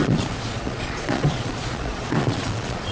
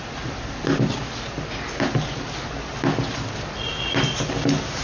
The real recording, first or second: second